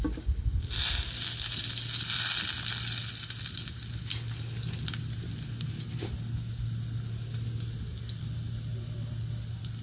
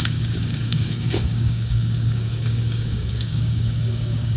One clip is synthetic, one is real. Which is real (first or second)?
first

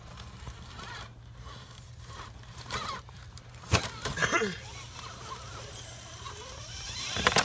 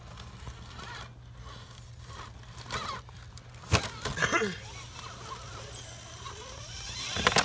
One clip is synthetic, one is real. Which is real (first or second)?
second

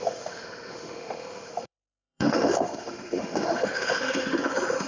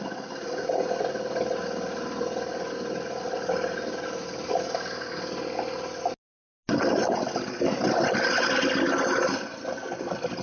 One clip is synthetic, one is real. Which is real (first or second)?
second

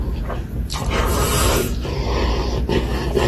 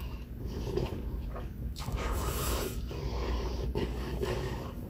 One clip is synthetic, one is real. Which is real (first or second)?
first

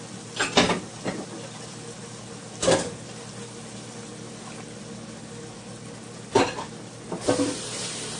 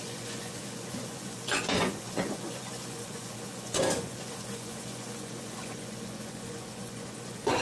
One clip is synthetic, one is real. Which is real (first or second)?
first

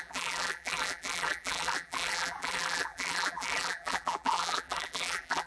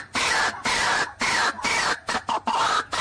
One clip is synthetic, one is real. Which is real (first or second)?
second